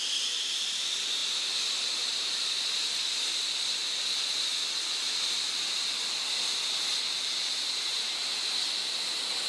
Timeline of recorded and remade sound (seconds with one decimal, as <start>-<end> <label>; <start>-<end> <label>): 0.0-4.5 remade; 4.5-7.3 recorded; 7.3-8.2 remade; 8.2-9.0 recorded; 9.0-9.5 remade